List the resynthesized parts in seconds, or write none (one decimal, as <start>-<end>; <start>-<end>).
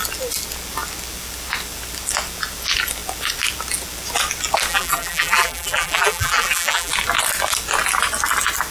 4.7-6.9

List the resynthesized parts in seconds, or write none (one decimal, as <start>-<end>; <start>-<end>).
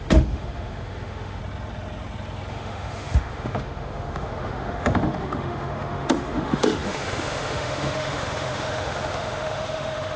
0.0-1.4; 2.5-10.2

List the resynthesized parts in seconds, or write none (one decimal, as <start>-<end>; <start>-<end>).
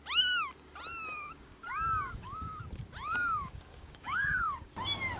1.1-2.6; 3.2-4.7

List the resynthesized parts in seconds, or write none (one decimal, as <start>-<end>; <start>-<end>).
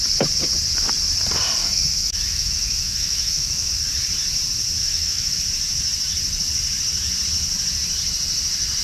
1.6-3.7; 4.8-5.4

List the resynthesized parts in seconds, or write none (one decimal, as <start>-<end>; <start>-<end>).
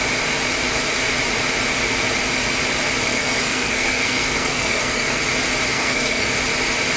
3.1-5.2; 5.7-6.3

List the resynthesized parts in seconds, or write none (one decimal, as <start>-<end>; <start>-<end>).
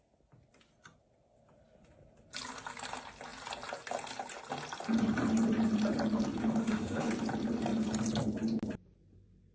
6.6-7.1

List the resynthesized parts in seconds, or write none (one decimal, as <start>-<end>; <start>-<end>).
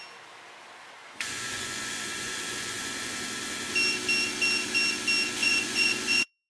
1.0-3.1; 5.4-6.5